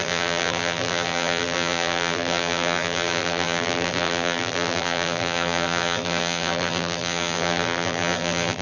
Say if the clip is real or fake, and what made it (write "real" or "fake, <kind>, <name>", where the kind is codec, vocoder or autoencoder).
fake, vocoder, BigVGAN v2